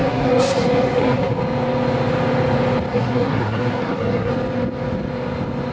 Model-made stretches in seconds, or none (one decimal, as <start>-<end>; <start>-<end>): 0.0-1.4; 2.9-4.3